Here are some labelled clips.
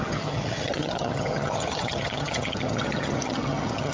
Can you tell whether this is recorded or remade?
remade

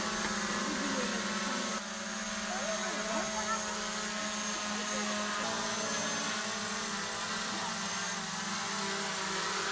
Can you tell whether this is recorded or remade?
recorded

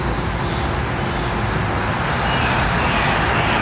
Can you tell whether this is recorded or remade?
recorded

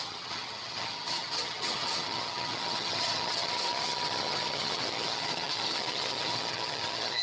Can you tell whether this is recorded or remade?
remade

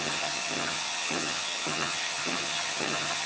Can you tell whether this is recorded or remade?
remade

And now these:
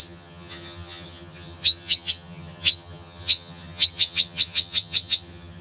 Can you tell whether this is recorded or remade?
remade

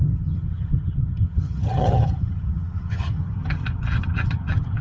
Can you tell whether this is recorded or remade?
remade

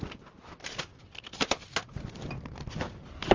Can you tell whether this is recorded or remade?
recorded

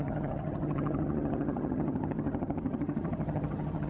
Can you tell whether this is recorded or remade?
remade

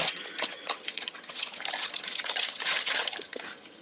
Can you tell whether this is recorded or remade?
remade